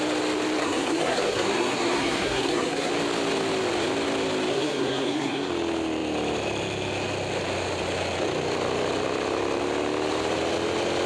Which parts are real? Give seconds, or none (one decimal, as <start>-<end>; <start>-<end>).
0.0-0.6; 2.9-4.5; 5.5-11.1

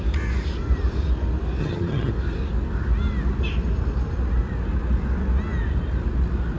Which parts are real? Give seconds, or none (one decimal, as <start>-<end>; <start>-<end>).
0.0-1.6; 2.1-6.6